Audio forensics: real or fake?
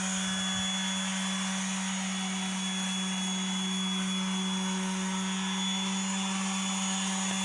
real